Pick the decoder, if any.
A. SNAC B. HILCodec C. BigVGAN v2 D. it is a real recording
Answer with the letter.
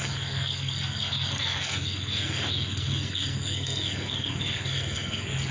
A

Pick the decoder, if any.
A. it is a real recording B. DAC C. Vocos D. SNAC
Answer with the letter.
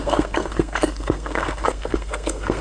D